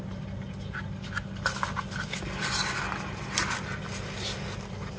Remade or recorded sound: recorded